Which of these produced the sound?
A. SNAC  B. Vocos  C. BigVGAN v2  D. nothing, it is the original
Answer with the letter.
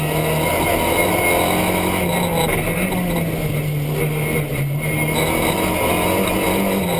D